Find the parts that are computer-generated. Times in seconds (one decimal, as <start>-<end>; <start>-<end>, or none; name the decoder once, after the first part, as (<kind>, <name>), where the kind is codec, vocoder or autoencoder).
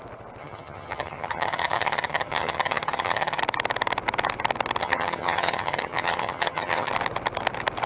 0.4-3.4 (vocoder, HiFi-GAN); 4.8-6.9